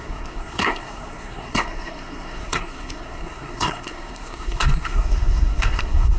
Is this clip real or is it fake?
fake